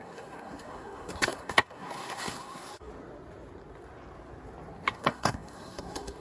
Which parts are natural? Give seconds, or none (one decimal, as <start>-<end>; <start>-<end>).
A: 2.9-4.9